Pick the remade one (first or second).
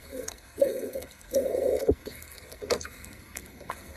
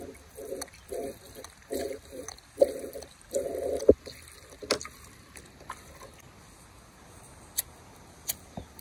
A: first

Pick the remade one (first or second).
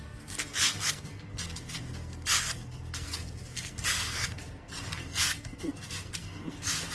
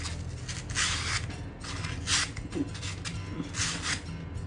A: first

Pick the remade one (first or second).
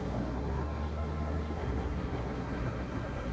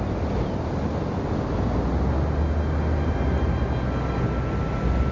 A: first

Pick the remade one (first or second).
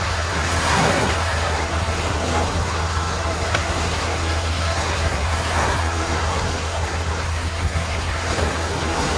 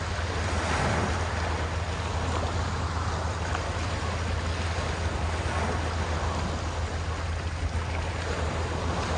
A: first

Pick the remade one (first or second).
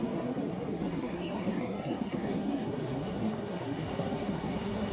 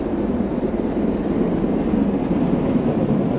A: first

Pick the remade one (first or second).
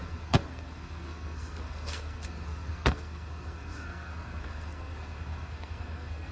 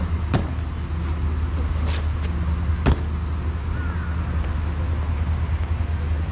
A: first